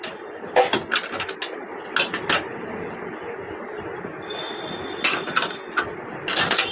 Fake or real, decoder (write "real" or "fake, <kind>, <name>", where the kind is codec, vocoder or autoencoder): real